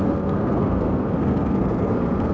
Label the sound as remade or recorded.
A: remade